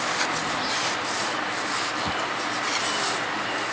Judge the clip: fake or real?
real